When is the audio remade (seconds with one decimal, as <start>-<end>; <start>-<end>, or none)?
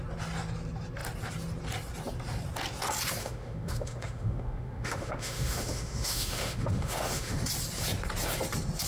3.2-7.4